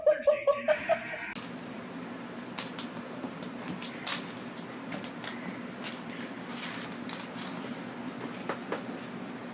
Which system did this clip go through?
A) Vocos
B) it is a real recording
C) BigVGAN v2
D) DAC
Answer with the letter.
B